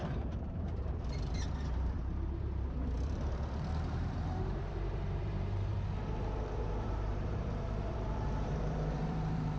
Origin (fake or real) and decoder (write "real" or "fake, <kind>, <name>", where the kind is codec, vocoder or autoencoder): fake, vocoder, BigVGAN v2